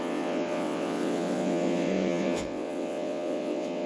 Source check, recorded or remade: remade